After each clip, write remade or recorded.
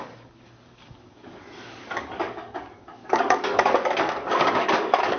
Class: remade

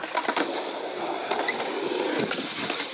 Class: recorded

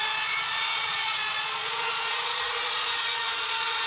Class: remade